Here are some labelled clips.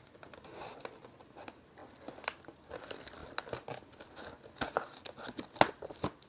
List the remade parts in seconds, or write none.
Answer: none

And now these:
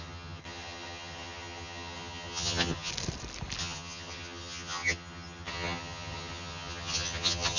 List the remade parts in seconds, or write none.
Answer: 0.0-2.9 (vocoder, HiFi-GAN); 3.6-7.6

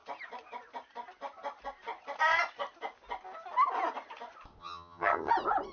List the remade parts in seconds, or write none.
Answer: 4.6-5.3 (vocoder, HiFi-GAN)

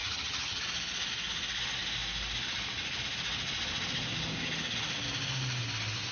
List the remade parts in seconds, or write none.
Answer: 0.0-0.6 (vocoder, HiFi-GAN)

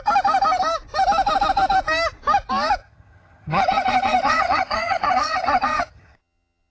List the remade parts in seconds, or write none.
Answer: 2.8-6.7 (vocoder, HiFi-GAN)